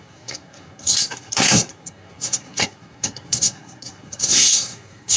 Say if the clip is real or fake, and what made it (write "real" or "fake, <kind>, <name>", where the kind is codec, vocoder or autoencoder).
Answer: fake, codec, SNAC